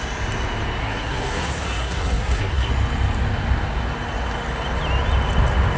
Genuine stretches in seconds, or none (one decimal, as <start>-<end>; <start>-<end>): 0.0-0.8; 2.7-5.8